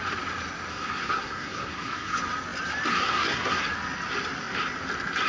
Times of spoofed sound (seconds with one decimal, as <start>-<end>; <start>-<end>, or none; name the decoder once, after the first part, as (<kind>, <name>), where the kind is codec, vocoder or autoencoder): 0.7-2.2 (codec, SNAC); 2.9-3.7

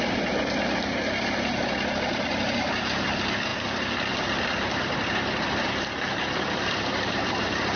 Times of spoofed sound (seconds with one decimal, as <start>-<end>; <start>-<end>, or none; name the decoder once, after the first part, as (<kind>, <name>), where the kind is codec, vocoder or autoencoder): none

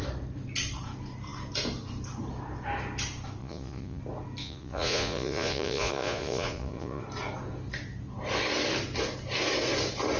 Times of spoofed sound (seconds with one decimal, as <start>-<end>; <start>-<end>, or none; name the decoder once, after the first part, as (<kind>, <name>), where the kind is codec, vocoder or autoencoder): 3.4-4.0 (vocoder, Vocos); 4.4-7.0